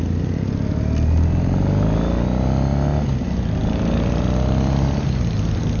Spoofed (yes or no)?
no